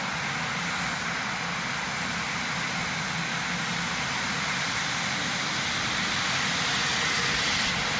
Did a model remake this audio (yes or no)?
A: no